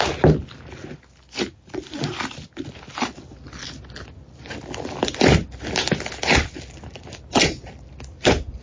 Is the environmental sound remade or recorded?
recorded